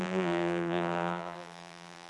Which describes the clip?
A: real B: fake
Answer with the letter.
B